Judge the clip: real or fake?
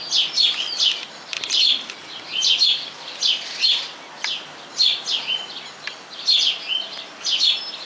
real